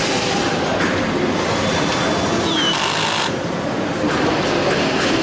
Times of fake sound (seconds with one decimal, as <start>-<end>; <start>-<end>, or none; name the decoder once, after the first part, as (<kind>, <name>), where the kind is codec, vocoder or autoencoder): none